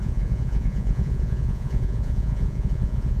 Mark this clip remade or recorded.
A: remade